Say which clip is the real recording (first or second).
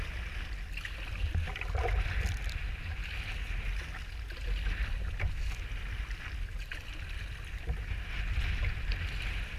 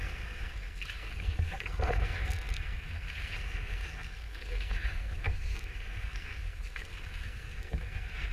first